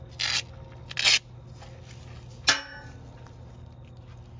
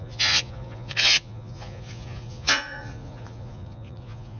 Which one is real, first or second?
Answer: first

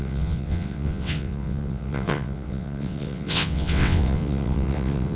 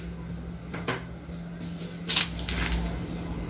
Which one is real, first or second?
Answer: second